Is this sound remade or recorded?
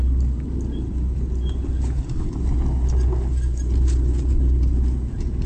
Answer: recorded